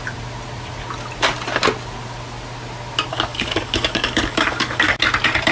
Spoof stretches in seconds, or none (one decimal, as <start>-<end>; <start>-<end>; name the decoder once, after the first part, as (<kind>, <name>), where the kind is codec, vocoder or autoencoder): 3.1-5.0 (codec, DAC)